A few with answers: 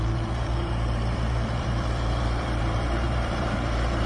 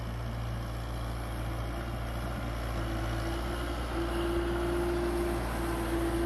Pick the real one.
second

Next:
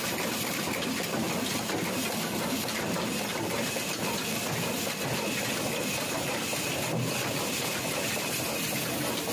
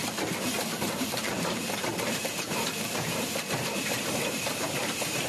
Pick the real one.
first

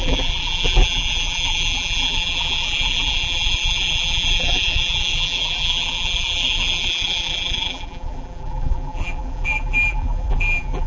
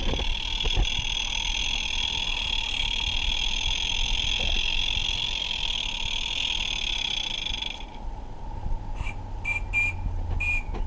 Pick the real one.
second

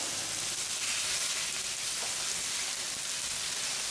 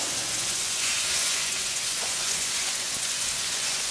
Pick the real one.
first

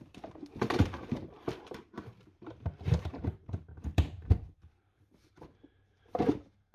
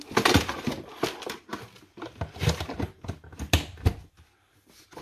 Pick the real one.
second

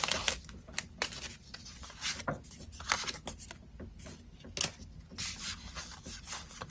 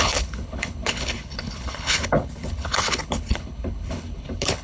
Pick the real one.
first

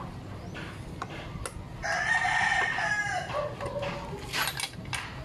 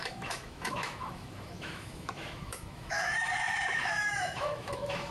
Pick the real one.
first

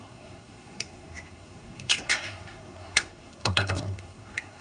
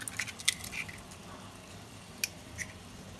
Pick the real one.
second